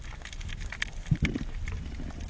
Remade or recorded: recorded